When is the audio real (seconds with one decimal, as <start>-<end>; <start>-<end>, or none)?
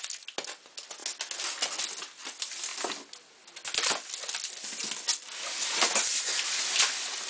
0.0-7.3